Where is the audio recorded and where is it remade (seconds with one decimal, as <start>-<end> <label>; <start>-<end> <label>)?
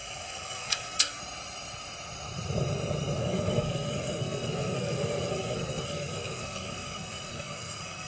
0.0-1.2 remade; 1.2-3.2 recorded; 3.2-8.1 remade